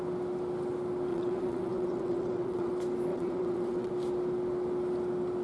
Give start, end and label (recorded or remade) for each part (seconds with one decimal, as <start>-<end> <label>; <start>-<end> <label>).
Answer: 0.0-1.1 recorded; 1.1-2.7 remade; 2.7-3.1 recorded; 3.1-3.9 remade; 3.9-5.4 recorded